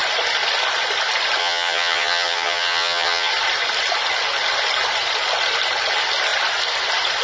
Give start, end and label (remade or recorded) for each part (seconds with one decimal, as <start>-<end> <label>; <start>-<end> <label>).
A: 0.0-1.4 recorded; 1.4-3.3 remade; 3.3-7.2 recorded